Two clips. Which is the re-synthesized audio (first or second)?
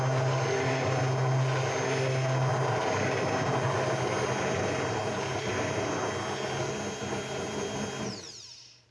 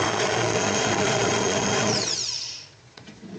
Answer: second